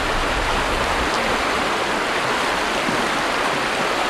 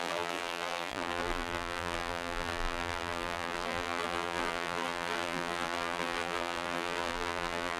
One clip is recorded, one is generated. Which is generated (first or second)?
second